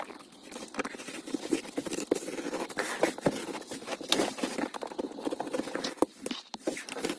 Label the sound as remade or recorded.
remade